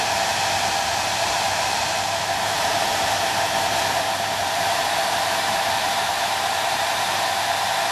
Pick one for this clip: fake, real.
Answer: fake